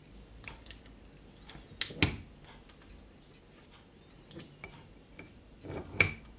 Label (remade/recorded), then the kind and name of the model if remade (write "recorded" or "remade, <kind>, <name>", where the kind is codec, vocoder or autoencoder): recorded